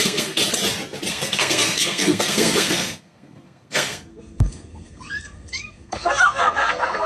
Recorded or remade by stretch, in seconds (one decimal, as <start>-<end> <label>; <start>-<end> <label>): 0.0-0.4 remade; 0.4-1.1 recorded; 1.1-7.1 remade